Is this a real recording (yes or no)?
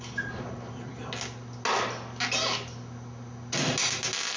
yes